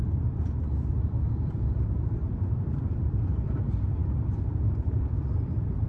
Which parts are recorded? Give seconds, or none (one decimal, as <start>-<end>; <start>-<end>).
0.0-0.9